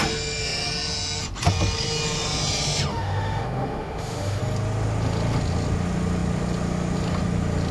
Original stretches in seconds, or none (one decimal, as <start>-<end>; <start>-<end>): 0.0-2.9; 4.4-7.7